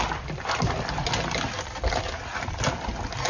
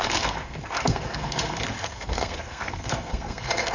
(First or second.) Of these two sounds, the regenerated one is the second